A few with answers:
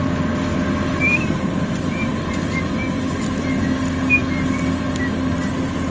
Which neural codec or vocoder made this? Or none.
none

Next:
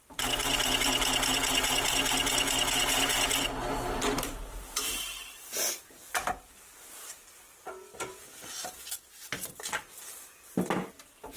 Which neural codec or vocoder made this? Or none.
none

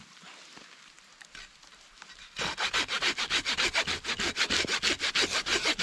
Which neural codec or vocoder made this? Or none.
none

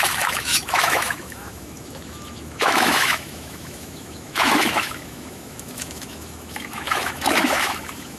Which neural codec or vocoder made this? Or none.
autoencoder, DAC-VAE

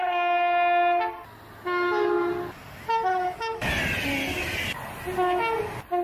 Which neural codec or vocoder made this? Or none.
none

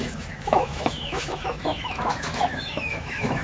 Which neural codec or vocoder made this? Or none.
autoencoder, DAC-VAE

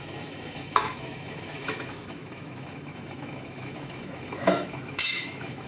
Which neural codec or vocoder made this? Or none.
autoencoder, DAC-VAE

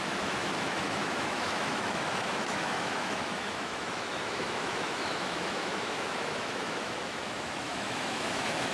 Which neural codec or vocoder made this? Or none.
autoencoder, DAC-VAE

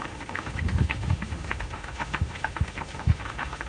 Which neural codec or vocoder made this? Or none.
autoencoder, DAC-VAE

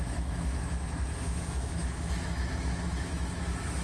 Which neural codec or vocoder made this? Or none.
autoencoder, DAC-VAE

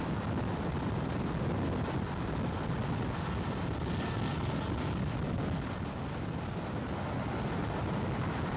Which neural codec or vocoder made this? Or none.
none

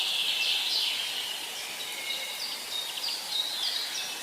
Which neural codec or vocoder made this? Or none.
none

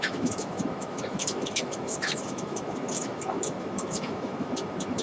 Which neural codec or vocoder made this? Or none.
autoencoder, DAC-VAE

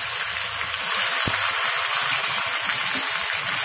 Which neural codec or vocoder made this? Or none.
none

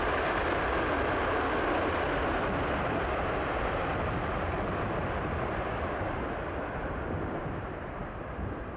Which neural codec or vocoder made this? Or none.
none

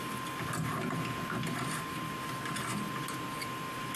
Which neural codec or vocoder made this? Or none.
none